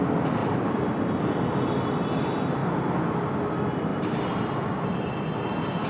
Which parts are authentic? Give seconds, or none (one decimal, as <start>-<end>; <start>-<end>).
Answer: 0.0-0.4; 1.2-3.9; 5.1-5.9